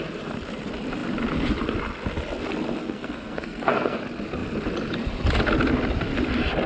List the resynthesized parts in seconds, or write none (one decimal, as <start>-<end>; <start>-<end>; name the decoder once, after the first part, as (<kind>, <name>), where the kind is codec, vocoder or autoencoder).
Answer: 2.8-4.0 (codec, SNAC)